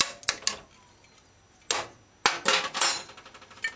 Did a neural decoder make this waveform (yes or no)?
no